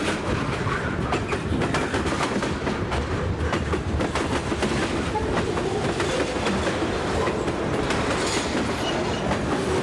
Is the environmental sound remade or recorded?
recorded